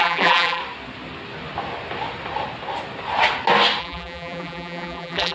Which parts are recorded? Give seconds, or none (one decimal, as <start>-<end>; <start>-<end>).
0.6-3.8